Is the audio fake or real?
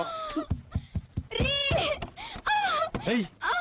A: real